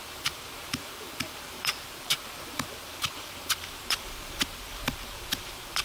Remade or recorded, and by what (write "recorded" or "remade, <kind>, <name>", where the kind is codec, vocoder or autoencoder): remade, vocoder, BigVGAN v2